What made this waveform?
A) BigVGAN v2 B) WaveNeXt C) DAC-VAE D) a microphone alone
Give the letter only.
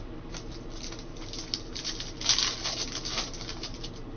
D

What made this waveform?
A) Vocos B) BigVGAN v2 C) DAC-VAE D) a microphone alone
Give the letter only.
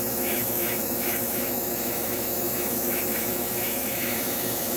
C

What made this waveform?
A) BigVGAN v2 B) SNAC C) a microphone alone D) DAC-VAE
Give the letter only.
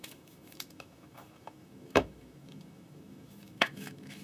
D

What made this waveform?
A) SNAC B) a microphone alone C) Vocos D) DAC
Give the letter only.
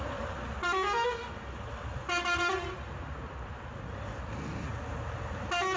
B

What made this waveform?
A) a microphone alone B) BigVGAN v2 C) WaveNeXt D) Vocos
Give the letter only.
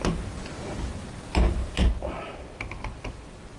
A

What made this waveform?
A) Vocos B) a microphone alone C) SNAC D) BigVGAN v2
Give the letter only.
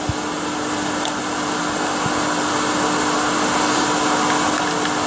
B